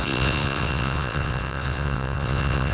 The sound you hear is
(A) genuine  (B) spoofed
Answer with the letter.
B